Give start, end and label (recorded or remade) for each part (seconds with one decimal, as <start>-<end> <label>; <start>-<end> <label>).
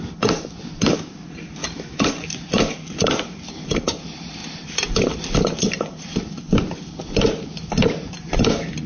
0.0-1.6 recorded; 1.6-2.1 remade; 2.1-8.9 recorded